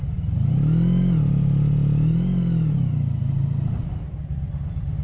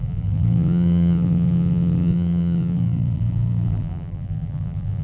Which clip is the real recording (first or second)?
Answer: first